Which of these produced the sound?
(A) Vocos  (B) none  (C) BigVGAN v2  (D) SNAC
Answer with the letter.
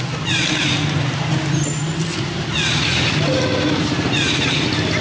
B